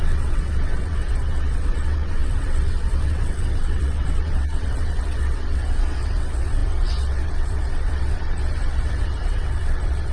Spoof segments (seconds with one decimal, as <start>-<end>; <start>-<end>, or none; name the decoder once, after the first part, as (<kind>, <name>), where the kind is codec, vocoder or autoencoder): 0.0-10.1 (vocoder, WaveNeXt)